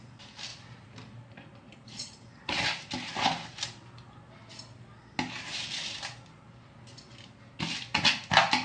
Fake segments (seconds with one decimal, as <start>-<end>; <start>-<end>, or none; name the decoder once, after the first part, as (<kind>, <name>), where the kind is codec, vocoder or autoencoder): 0.5-4.2 (vocoder, BigVGAN v2)